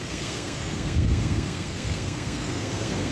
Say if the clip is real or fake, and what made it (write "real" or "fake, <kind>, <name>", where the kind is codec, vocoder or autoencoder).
fake, codec, SNAC